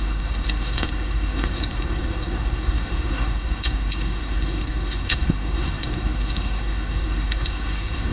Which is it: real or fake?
fake